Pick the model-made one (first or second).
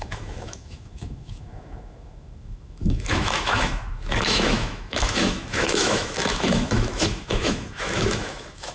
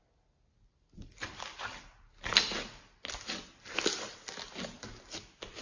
first